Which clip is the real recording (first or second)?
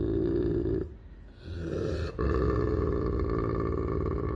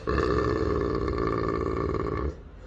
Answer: first